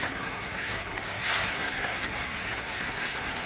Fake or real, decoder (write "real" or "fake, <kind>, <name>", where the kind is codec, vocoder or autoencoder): fake, codec, SNAC